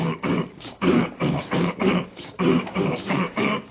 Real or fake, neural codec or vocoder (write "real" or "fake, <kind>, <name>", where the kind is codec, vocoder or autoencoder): fake, codec, DAC